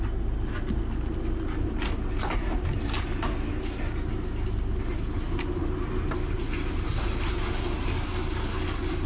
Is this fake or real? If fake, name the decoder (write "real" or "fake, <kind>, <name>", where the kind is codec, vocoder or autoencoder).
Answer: real